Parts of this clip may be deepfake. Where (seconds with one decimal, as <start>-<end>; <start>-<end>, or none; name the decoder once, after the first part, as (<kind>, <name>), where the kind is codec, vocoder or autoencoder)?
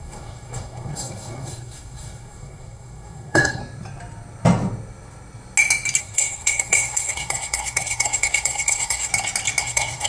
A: 0.0-3.6 (codec, SNAC); 6.0-9.1; 9.6-10.1